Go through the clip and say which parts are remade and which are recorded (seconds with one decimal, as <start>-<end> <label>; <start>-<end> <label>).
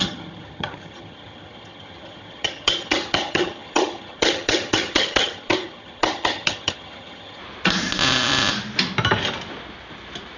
0.0-7.4 remade; 7.4-10.4 recorded